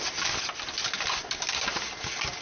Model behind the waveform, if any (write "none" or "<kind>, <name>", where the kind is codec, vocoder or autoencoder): none